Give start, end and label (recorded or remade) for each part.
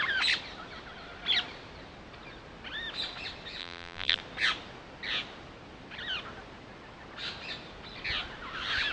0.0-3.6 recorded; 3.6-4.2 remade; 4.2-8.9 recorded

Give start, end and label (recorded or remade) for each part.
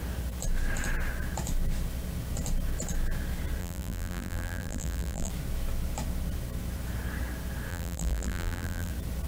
0.0-3.6 recorded; 3.6-5.3 remade; 5.3-7.7 recorded; 7.7-8.9 remade; 8.9-9.3 recorded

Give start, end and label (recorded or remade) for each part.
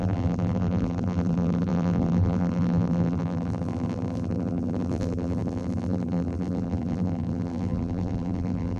0.0-8.8 remade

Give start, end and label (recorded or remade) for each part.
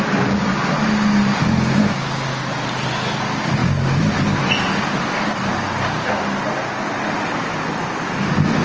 0.0-8.6 recorded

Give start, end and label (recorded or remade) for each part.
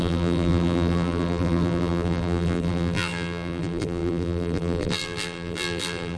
0.0-6.2 remade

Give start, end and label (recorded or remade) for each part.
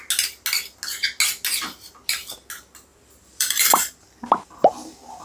0.0-2.9 recorded; 2.9-3.8 remade; 3.8-5.2 recorded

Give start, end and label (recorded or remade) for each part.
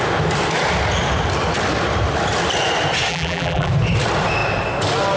0.0-3.1 recorded; 3.1-3.7 remade; 3.7-5.2 recorded